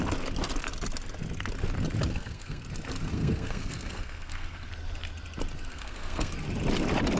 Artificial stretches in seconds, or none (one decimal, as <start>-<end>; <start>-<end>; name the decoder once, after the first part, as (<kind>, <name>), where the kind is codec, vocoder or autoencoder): 2.1-2.6 (codec, SNAC); 3.1-4.7; 5.7-6.3